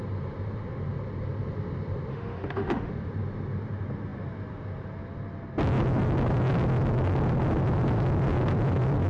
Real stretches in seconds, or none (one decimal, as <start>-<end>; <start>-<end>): 0.0-2.1; 2.9-9.1